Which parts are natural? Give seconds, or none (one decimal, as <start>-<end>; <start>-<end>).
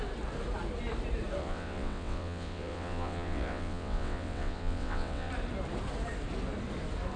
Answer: 0.0-1.4; 5.3-7.2